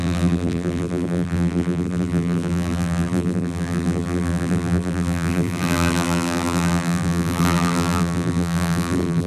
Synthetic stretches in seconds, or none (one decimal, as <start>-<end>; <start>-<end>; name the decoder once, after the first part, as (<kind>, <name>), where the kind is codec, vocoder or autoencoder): 0.0-9.3 (vocoder, BigVGAN v2)